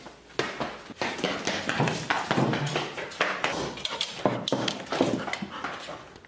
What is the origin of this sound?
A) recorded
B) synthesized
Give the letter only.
A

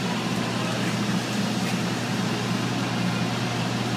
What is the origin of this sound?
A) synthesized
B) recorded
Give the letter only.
B